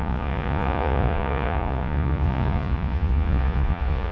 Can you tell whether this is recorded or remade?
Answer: remade